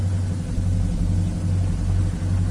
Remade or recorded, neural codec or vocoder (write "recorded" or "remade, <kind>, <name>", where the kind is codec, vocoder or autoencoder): recorded